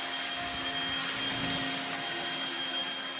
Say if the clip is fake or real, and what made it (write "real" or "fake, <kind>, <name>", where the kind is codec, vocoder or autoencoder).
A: real